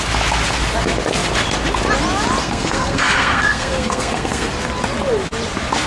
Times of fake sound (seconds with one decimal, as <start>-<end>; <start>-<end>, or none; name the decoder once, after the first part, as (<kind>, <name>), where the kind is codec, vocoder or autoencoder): 2.4-4.5 (codec, SNAC)